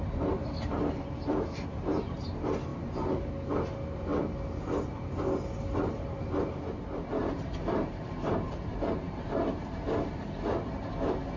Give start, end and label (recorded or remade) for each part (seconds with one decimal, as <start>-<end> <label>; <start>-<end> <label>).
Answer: 0.0-2.3 remade; 2.3-2.7 recorded; 2.7-3.3 remade; 3.3-7.2 recorded; 7.2-10.9 remade; 10.9-11.4 recorded